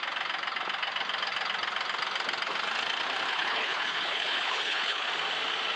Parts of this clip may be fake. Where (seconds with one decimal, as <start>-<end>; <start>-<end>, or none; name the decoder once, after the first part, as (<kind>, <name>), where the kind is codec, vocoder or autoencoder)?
3.3-5.1 (codec, HILCodec)